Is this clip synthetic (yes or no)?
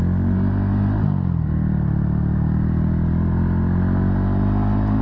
no